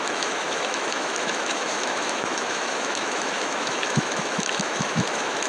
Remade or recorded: remade